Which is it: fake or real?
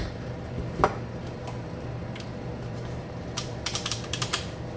fake